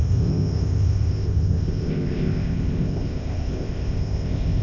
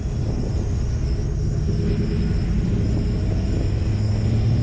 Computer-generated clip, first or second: first